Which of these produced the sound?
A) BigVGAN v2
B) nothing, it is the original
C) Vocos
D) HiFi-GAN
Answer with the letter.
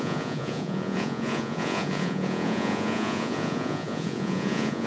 C